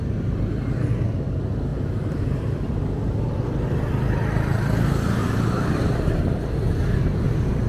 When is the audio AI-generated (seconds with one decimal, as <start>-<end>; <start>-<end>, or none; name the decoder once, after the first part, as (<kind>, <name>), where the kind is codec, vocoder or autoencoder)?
1.7-3.2 (vocoder, BigVGAN v2); 5.2-6.2